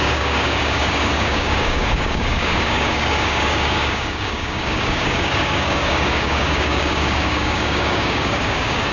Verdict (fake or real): fake